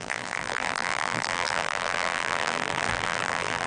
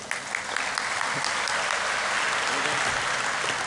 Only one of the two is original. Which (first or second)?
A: second